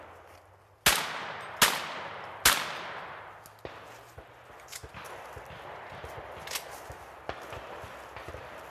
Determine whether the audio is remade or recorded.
recorded